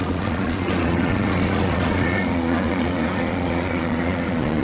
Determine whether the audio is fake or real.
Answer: fake